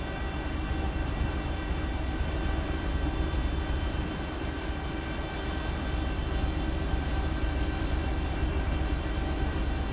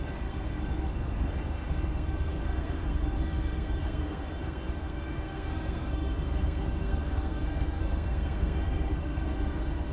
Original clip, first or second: first